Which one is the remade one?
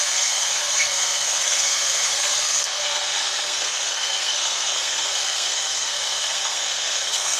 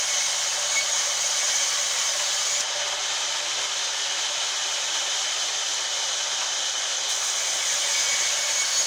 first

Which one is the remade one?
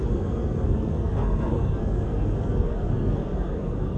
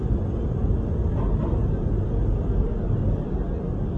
first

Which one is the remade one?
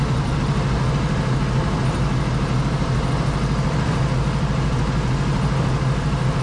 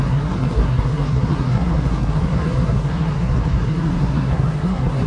second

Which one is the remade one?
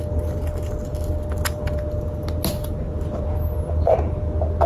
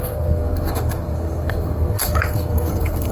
second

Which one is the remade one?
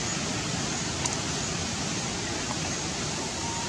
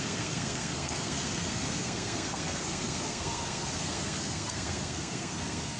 second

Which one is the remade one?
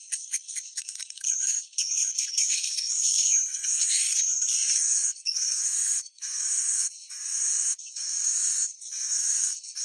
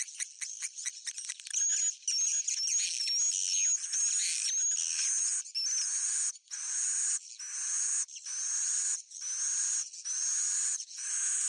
first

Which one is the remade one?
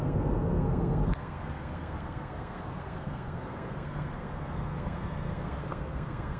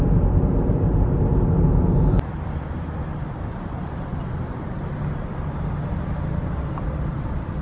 first